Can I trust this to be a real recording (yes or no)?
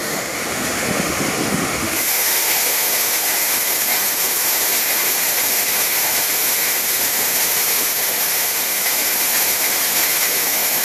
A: no